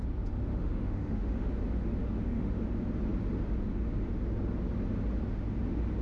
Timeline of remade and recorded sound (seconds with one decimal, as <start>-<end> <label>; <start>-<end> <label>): 0.0-0.5 recorded; 0.5-1.5 remade; 1.5-2.0 recorded; 2.0-2.6 remade; 2.6-6.0 recorded